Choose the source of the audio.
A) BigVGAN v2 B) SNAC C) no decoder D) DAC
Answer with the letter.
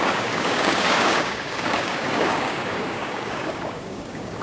D